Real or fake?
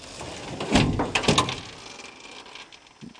real